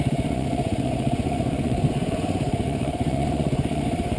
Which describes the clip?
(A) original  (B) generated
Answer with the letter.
B